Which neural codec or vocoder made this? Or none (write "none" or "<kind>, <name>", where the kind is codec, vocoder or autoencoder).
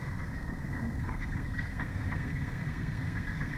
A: codec, SNAC